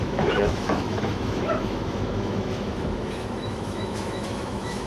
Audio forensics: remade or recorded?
remade